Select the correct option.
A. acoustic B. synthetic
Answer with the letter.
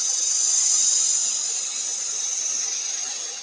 B